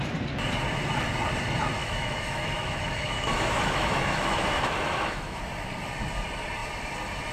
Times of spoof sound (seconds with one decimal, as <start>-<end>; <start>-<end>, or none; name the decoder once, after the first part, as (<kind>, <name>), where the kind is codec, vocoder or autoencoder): 1.8-5.4 (autoencoder, DAC-VAE)